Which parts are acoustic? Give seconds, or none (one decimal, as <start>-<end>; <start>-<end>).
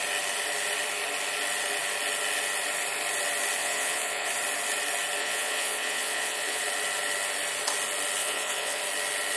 0.0-3.6; 4.3-5.2; 6.6-8.2; 8.8-9.4